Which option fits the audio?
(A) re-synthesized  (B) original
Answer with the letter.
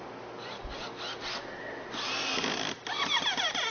B